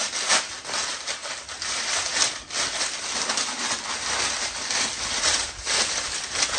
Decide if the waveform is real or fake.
real